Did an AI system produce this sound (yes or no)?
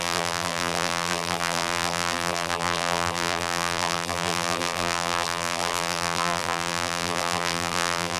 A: yes